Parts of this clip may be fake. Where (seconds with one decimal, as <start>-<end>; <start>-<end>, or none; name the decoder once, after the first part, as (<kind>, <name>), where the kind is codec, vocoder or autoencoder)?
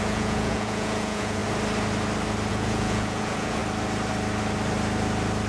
0.0-1.4 (vocoder, Vocos); 2.5-3.6